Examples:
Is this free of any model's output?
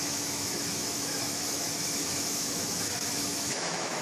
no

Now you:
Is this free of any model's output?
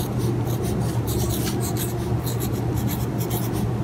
yes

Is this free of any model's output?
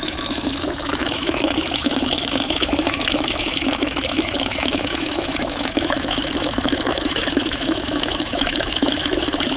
no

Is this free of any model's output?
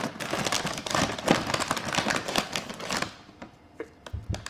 yes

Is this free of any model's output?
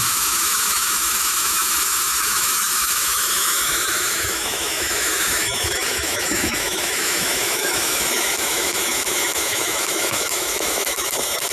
no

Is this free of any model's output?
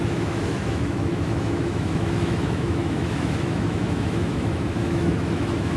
no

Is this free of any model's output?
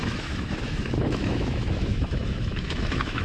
no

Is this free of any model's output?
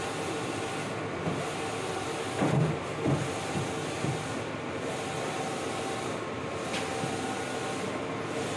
yes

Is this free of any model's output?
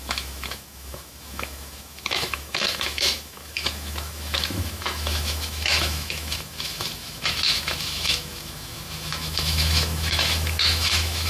no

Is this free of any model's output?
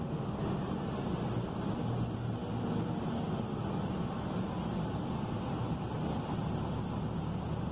yes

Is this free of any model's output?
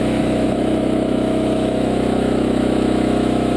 no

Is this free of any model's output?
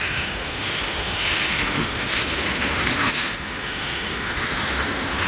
no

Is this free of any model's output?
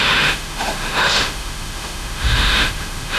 no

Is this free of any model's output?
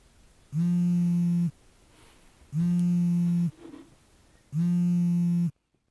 yes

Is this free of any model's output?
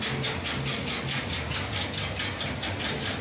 yes